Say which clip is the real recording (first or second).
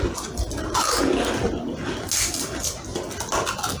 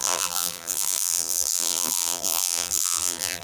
first